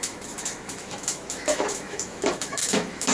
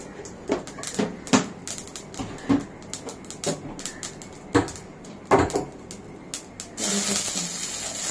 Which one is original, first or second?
second